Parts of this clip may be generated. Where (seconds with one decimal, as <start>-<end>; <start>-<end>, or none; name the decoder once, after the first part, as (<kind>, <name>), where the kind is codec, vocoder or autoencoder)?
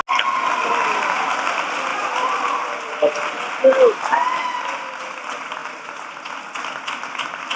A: 1.9-3.2 (vocoder, BigVGAN v2); 5.6-6.1